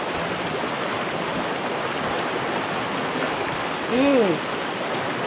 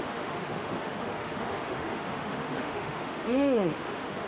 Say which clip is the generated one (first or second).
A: second